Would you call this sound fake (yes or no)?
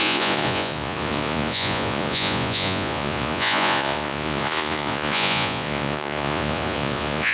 yes